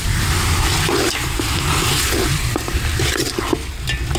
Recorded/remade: recorded